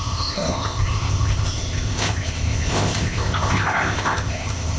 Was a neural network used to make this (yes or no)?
yes